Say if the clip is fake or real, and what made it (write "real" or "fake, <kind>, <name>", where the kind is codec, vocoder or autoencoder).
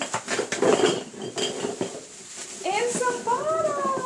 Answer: fake, vocoder, BigVGAN v2